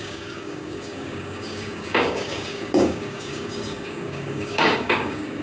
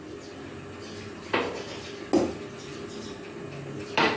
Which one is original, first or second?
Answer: second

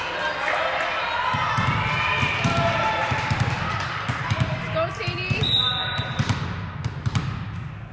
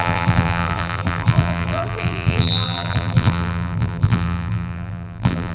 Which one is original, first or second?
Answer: first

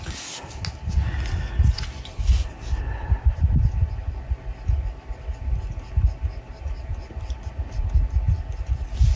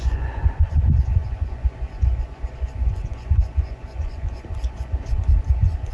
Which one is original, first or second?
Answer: first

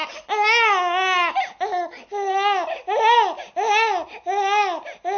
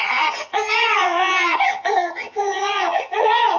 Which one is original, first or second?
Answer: first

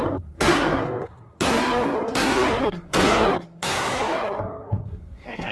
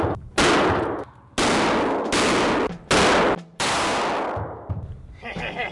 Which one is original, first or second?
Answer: second